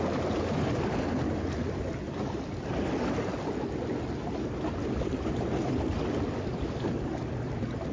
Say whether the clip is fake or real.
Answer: real